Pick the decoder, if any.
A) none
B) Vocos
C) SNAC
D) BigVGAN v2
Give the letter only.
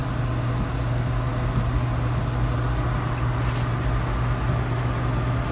A